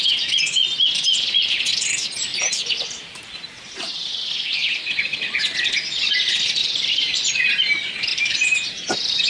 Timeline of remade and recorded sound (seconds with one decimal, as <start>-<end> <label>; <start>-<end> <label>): 0.0-2.3 recorded; 2.3-4.3 remade; 4.3-6.6 recorded; 6.6-7.3 remade; 7.3-8.1 recorded; 8.1-8.7 remade; 8.7-9.3 recorded